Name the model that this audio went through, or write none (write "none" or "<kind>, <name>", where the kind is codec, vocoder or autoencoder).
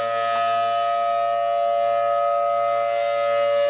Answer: none